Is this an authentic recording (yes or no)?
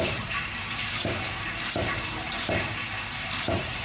no